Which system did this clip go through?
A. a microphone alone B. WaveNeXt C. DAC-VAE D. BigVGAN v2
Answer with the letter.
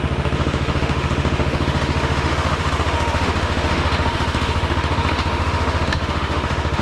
C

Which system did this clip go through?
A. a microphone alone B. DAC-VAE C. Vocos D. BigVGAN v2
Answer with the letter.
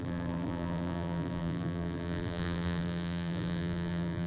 D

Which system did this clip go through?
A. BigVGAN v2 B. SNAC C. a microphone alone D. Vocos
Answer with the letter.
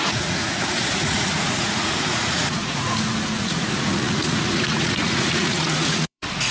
D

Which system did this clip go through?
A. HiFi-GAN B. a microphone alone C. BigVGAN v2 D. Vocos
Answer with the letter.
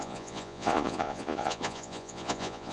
D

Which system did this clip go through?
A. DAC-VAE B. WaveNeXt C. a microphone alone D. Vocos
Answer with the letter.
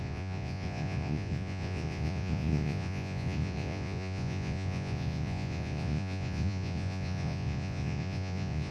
D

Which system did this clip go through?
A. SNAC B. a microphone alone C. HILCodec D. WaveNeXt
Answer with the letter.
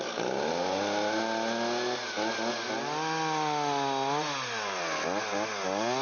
B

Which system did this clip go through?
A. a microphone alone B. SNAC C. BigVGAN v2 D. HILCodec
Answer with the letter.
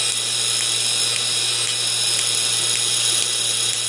A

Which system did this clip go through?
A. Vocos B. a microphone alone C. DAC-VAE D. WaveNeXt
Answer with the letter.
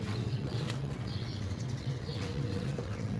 D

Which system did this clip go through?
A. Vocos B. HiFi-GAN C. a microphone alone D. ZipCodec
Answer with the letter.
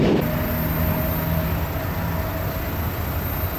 C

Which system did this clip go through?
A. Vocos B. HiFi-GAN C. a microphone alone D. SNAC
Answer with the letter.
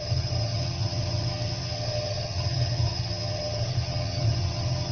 B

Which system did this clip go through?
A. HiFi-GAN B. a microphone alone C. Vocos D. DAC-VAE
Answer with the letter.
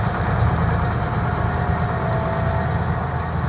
B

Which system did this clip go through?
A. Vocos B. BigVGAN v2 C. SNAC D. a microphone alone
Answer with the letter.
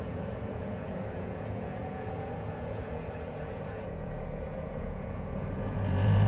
A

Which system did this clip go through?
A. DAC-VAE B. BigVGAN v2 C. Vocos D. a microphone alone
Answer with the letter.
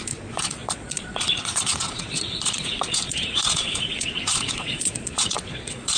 C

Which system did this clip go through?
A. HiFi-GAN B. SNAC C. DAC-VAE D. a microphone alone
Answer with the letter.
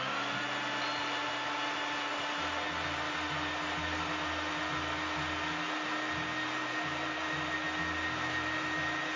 D